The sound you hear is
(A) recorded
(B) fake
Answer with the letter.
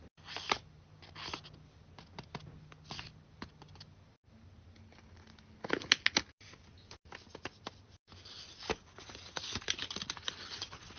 A